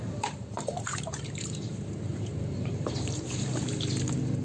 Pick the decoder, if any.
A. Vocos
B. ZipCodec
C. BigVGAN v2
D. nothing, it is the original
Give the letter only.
C